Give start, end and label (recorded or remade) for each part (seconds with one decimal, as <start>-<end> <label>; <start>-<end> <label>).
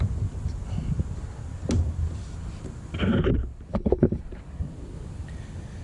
0.0-3.7 recorded; 3.7-4.2 remade; 4.2-5.8 recorded